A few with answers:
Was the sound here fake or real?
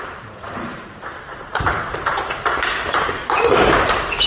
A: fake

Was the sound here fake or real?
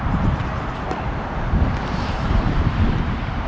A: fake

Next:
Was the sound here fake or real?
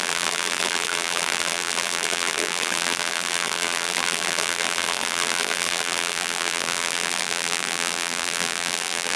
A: fake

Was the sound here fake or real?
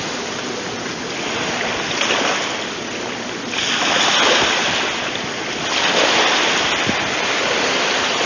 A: real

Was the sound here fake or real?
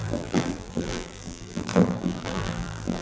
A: fake